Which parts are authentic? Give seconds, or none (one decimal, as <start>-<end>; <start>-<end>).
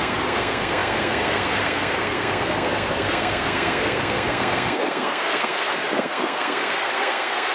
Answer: none